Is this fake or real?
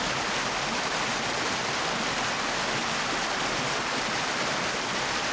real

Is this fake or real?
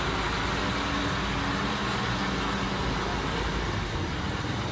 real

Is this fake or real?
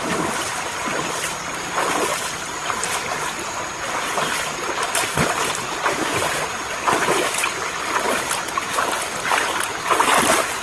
real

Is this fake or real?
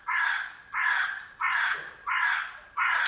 real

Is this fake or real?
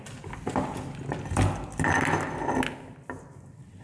real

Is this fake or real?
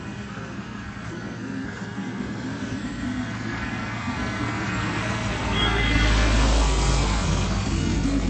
fake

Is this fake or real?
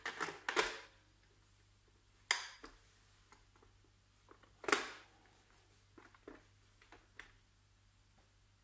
real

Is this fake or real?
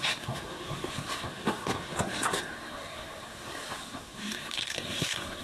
fake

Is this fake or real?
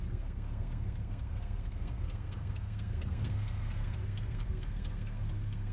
fake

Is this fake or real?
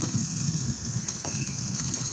fake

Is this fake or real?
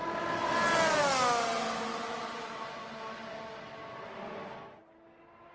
real